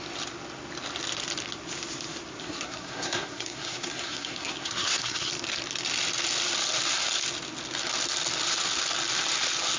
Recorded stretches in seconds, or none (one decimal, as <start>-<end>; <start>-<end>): 0.0-2.4; 5.3-9.8